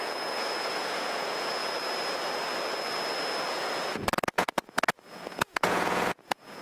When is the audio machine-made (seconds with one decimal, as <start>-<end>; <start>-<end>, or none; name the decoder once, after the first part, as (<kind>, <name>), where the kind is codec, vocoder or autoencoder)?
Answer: 0.0-1.6 (vocoder, Vocos); 3.5-6.6